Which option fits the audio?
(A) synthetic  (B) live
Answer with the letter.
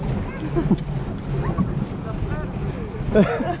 B